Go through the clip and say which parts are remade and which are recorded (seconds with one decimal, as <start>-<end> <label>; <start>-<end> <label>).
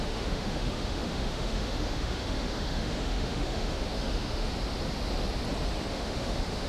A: 0.0-4.5 remade; 4.5-5.9 recorded; 5.9-6.7 remade